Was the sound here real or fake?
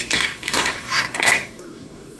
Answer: fake